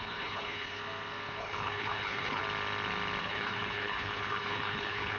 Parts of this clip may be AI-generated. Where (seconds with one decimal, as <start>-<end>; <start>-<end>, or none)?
0.0-0.8; 1.4-2.4; 3.2-5.2